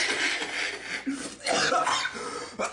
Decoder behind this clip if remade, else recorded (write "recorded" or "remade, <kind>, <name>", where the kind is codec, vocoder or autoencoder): recorded